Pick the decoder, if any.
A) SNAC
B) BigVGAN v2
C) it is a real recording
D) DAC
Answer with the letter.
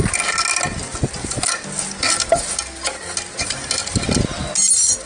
C